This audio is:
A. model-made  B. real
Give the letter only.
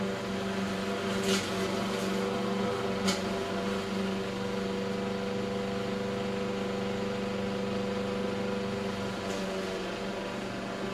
B